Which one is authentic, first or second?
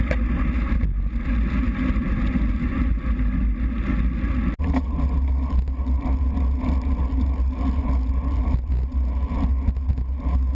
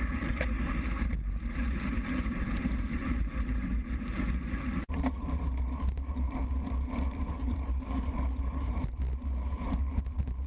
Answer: first